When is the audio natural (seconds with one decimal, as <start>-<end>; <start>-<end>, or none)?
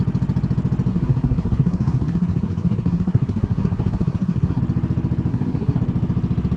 0.0-0.9; 4.6-5.3; 5.8-6.6